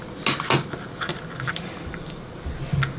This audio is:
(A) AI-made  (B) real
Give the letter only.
B